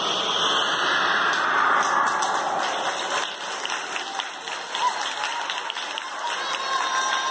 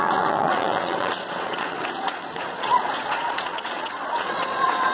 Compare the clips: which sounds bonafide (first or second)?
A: first